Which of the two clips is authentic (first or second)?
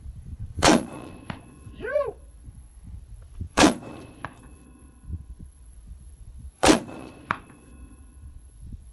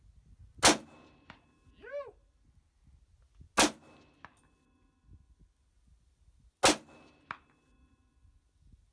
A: second